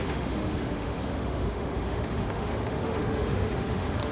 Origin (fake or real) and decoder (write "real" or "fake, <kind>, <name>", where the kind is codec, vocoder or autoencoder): fake, autoencoder, DAC-VAE